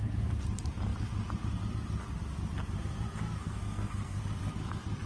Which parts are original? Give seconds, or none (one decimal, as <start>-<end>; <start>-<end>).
0.0-3.4; 4.2-5.1